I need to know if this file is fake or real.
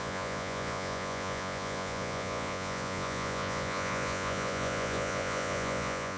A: fake